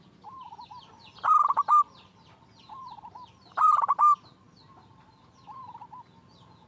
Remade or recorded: recorded